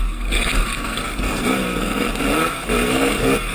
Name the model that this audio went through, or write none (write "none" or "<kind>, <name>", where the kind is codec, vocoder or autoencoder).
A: codec, SNAC